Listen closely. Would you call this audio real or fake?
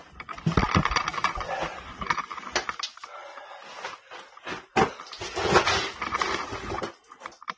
real